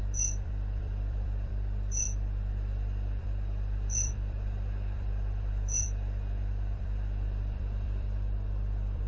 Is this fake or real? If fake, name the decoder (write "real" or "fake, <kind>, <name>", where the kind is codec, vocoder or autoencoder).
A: fake, vocoder, BigVGAN v2